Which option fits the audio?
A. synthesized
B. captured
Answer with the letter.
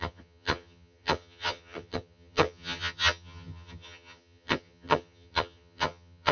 A